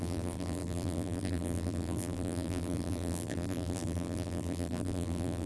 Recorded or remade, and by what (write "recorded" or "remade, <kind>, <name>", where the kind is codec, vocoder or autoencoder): remade, vocoder, BigVGAN v2